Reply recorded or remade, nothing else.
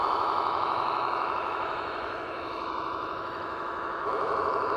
remade